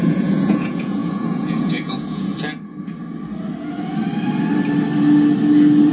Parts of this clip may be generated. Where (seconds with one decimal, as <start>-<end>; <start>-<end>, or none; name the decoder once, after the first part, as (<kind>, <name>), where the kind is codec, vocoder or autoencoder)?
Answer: 0.0-2.3 (vocoder, Vocos)